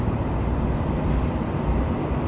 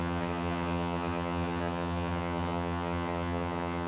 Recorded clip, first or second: first